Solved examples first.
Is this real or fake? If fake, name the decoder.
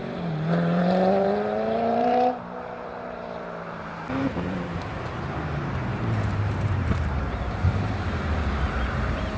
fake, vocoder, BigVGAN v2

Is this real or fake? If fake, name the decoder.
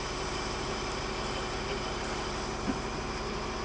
real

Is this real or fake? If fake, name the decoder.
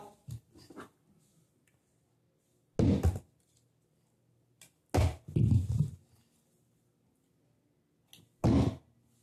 real